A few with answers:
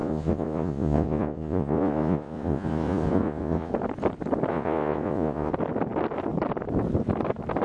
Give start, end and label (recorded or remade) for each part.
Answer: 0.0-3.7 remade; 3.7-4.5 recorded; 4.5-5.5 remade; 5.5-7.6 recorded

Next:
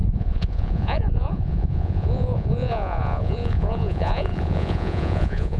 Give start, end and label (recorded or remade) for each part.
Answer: 0.0-5.6 remade